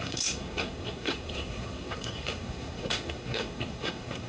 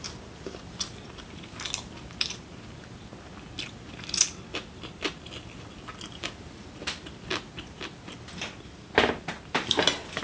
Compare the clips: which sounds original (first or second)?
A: second